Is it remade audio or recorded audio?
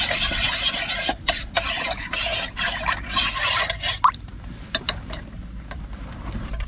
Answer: remade